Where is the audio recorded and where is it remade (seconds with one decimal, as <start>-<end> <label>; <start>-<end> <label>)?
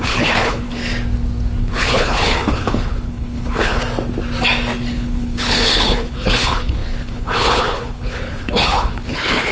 0.0-0.8 remade; 0.8-1.6 recorded; 1.6-3.8 remade; 3.8-4.9 recorded; 4.9-9.5 remade